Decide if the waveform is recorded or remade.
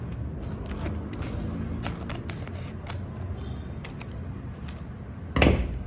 recorded